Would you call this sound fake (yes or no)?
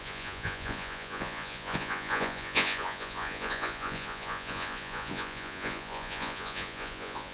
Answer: yes